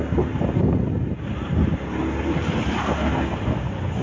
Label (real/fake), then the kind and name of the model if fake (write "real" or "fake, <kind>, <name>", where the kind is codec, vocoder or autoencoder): real